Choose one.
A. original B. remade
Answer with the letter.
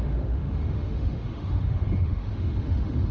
B